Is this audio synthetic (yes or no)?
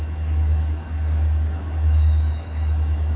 yes